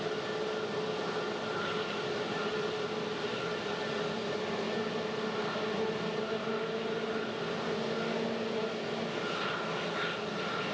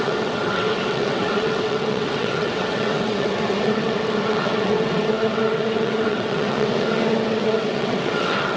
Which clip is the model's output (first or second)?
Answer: second